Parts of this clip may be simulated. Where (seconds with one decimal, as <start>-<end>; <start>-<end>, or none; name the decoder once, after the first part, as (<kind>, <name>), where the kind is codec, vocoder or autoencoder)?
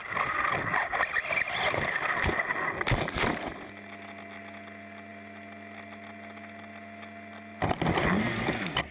none